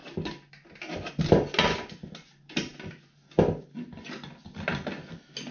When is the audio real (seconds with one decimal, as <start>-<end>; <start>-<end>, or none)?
0.0-5.5